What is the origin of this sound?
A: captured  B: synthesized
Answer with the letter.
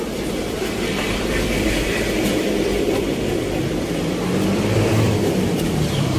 B